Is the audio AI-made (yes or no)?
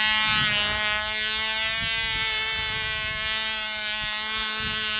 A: no